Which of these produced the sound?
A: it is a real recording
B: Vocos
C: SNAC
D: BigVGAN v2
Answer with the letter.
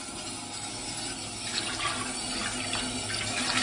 A